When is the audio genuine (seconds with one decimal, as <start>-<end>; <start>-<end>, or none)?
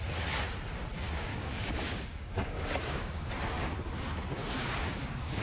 0.0-1.3; 3.3-4.4